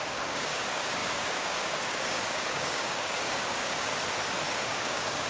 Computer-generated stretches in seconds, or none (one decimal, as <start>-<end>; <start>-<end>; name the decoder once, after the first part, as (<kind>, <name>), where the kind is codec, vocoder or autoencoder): 0.0-3.9 (codec, DAC); 4.5-5.3